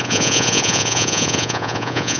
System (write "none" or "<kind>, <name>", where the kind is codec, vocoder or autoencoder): vocoder, Vocos